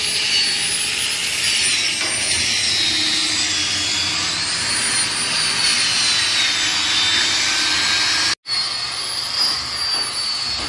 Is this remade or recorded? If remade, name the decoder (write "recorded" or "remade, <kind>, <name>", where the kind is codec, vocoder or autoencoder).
recorded